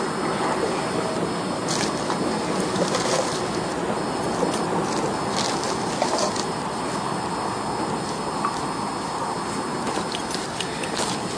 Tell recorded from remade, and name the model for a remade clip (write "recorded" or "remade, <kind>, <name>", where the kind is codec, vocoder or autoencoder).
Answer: recorded